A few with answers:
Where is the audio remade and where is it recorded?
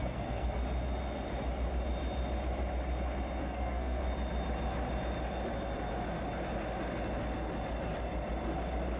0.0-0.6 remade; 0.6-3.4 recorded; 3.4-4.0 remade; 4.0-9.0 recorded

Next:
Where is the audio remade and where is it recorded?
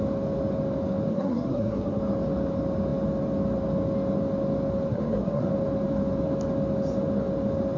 0.0-1.1 recorded; 1.1-2.0 remade; 2.0-4.9 recorded; 4.9-5.5 remade; 5.5-7.8 recorded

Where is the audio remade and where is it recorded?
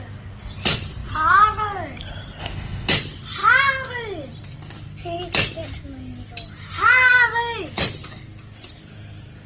0.0-2.4 recorded; 2.4-2.9 remade; 2.9-9.5 recorded